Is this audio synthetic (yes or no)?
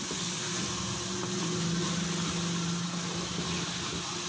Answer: no